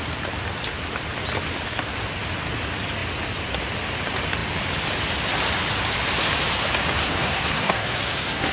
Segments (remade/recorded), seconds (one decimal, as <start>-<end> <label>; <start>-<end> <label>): 0.0-7.0 recorded; 7.0-8.5 remade